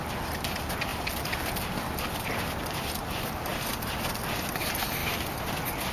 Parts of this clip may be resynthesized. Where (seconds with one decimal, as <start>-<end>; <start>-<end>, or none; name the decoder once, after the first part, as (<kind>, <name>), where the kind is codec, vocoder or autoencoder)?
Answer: none